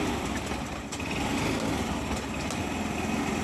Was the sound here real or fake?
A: real